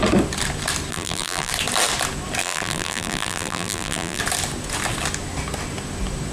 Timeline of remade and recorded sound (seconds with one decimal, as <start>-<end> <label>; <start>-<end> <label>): 0.0-0.9 recorded; 0.9-1.5 remade; 1.5-2.4 recorded; 2.4-4.2 remade; 4.2-6.3 recorded